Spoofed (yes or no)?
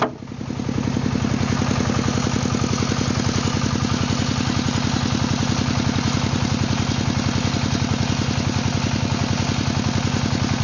no